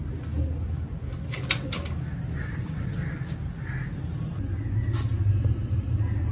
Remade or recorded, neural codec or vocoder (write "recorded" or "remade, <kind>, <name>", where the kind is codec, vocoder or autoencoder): recorded